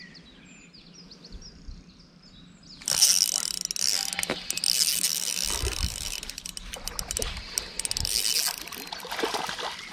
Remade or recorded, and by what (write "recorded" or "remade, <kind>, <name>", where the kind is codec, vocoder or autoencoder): recorded